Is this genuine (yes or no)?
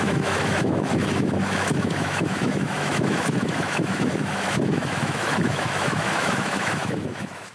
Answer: no